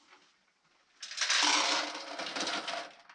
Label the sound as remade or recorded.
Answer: recorded